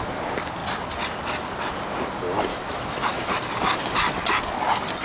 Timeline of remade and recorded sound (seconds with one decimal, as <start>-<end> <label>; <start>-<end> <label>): 0.0-2.5 recorded; 2.5-3.3 remade; 3.3-5.0 recorded